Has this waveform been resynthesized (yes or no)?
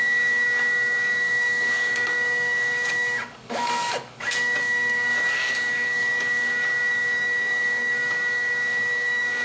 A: yes